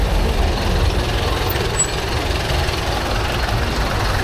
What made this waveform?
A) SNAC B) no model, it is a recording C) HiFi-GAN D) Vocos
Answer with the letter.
B